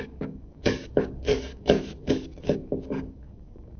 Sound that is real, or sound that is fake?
fake